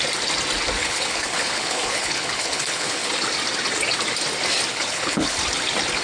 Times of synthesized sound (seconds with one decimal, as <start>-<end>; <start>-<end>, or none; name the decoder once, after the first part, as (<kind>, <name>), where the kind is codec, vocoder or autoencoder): 0.8-3.1 (codec, HILCodec); 4.7-5.4